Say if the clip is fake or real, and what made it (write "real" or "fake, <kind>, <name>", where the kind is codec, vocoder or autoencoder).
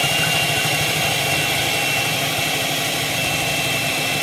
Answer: real